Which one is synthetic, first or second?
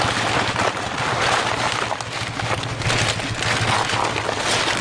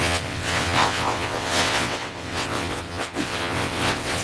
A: second